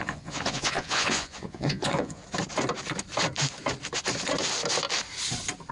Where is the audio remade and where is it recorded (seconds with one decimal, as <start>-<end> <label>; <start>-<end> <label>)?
0.0-2.2 remade; 2.2-5.7 recorded